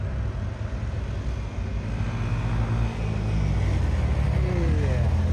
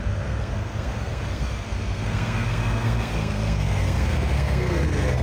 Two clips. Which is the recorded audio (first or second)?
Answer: first